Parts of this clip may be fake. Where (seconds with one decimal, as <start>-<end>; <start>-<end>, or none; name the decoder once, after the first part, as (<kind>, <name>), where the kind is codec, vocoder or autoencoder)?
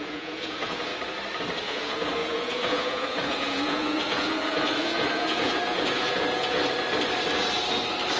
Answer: 0.0-0.9 (vocoder, Vocos); 1.6-6.6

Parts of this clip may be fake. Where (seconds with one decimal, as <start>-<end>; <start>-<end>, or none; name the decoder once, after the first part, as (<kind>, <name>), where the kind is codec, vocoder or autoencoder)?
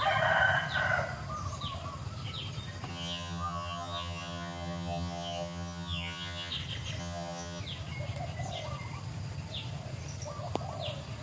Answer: 2.9-6.5 (vocoder, HiFi-GAN); 7.0-7.6